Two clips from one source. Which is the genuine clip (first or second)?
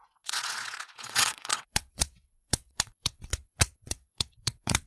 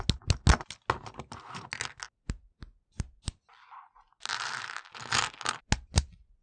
second